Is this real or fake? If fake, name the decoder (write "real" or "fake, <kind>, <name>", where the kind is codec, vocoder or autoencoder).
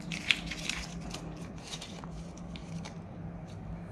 real